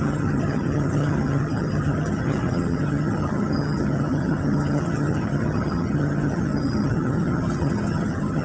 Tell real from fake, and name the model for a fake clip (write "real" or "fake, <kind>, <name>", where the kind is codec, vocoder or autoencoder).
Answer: fake, vocoder, HiFi-GAN